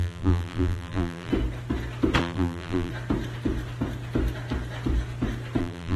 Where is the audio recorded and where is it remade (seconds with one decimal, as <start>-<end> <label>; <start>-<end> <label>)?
0.0-1.3 remade; 1.3-2.2 recorded; 2.2-2.9 remade; 2.9-5.6 recorded; 5.6-6.0 remade